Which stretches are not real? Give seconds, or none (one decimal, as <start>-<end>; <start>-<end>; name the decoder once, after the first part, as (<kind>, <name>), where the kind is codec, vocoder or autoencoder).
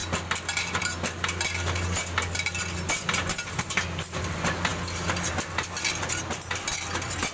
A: none